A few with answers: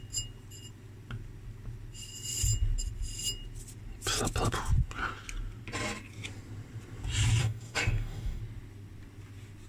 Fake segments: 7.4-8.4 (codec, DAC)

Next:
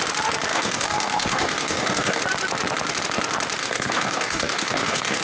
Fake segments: 0.5-2.2 (codec, DAC); 3.6-5.2

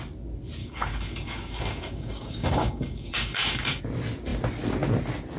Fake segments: 0.6-3.8 (codec, DAC)

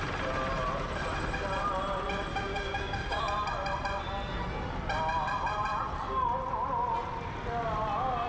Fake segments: 2.3-3.2 (codec, DAC)